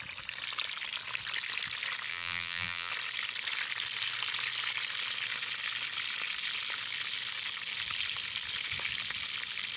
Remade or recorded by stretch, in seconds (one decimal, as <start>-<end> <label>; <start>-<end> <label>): 0.0-2.1 recorded; 2.1-2.9 remade; 2.9-9.8 recorded